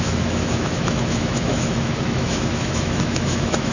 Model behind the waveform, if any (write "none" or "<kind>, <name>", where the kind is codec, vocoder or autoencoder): autoencoder, DAC-VAE